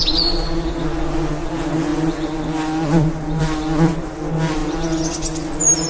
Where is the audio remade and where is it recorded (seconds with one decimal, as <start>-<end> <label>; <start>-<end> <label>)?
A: 0.0-5.9 recorded